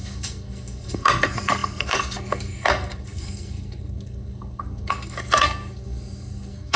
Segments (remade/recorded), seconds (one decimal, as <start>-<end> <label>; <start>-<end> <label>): 0.0-6.8 remade